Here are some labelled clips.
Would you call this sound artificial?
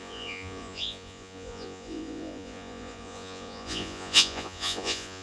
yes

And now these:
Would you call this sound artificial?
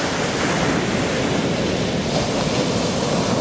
no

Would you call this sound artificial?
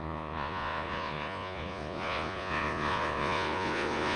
yes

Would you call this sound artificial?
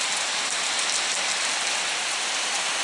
no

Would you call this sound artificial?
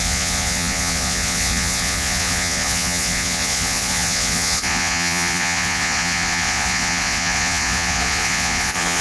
yes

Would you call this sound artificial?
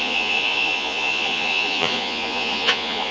yes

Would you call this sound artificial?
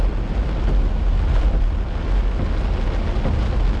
no